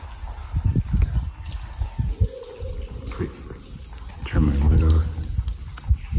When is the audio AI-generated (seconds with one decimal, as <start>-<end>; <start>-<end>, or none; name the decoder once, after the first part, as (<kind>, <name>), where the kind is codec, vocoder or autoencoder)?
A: none